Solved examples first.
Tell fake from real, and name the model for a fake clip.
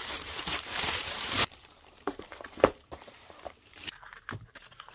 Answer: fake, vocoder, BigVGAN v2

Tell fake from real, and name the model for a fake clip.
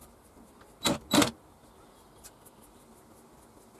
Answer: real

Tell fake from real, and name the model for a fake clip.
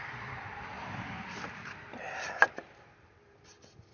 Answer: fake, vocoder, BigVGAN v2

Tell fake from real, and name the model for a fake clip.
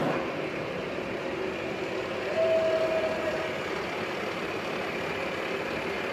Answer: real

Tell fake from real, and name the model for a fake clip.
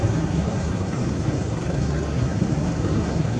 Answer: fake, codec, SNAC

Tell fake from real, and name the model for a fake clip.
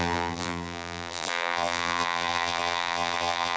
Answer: fake, vocoder, BigVGAN v2